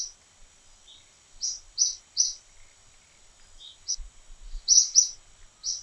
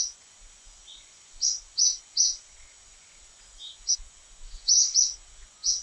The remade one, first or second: second